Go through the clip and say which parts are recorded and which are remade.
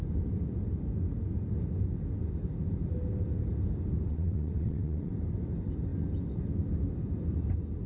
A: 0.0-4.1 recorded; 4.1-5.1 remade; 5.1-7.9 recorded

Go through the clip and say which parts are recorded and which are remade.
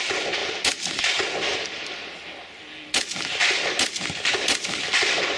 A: 0.0-5.4 recorded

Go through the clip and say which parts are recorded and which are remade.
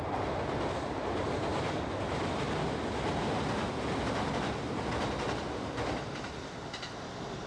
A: 0.0-7.5 recorded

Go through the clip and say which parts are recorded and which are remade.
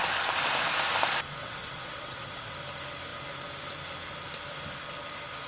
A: 0.0-1.4 recorded; 1.4-2.5 remade; 2.5-5.5 recorded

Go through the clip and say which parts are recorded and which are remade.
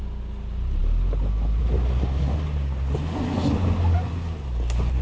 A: 0.0-5.0 recorded